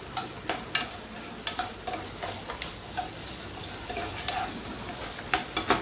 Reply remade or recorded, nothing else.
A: recorded